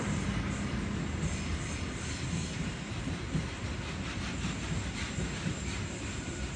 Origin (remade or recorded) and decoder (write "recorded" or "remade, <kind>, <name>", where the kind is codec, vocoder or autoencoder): recorded